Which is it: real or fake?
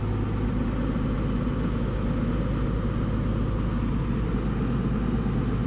real